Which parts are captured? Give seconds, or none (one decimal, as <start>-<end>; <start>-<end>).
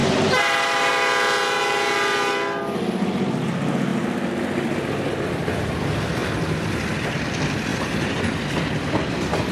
0.9-7.7; 8.2-9.5